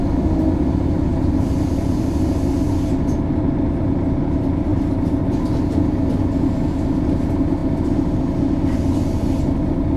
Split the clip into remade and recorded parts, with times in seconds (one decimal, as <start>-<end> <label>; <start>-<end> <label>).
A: 0.0-1.1 recorded; 1.1-2.3 remade; 2.3-4.7 recorded; 4.7-5.3 remade; 5.3-10.0 recorded